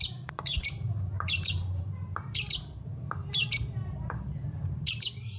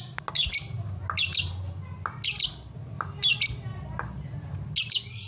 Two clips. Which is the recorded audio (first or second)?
second